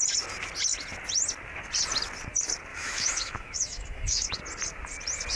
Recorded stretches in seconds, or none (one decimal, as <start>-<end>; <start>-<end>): 0.0-2.7; 4.4-5.4